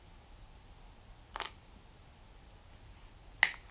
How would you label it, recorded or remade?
recorded